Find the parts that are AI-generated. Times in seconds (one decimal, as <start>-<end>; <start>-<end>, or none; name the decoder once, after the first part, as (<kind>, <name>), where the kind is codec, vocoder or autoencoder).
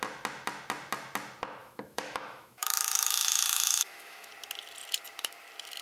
1.6-4.3 (autoencoder, DAC-VAE)